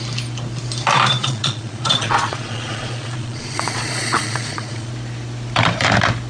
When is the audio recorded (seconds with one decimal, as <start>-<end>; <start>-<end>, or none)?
0.0-1.2; 4.9-6.3